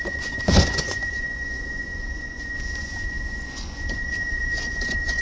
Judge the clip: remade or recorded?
remade